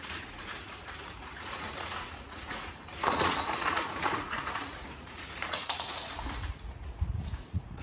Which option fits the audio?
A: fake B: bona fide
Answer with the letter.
A